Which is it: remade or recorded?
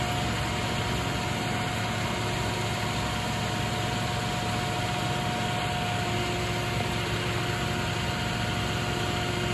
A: recorded